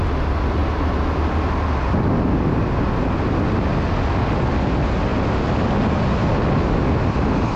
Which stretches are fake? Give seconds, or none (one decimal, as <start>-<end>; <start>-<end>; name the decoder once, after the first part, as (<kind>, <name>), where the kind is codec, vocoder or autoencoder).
none